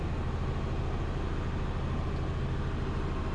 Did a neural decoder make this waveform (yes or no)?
no